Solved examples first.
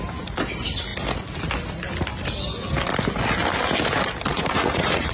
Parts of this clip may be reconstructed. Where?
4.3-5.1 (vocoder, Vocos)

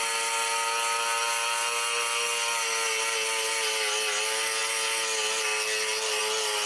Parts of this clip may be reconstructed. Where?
none

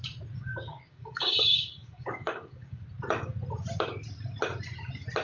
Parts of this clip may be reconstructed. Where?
0.4-2.8 (codec, DAC)

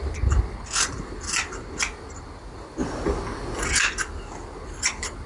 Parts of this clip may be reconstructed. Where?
none

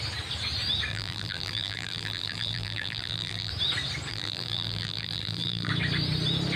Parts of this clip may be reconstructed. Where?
0.9-3.5 (vocoder, BigVGAN v2); 4.1-5.7

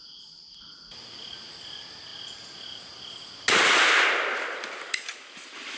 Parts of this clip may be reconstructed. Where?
none

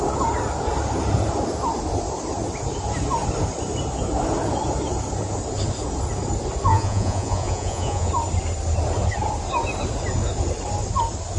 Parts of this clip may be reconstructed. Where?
6.7-8.1 (vocoder, Vocos)